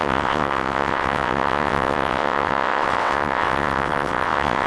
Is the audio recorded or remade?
remade